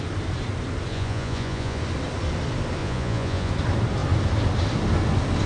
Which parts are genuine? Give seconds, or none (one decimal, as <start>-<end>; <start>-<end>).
0.0-0.9; 1.8-2.8; 3.5-5.5